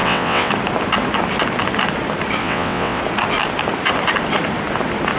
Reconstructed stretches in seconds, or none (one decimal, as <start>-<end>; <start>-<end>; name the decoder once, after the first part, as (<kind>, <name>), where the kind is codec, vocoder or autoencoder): 0.0-0.5 (vocoder, WaveNeXt); 2.4-3.0